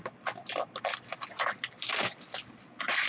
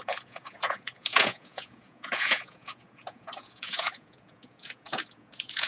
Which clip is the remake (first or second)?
second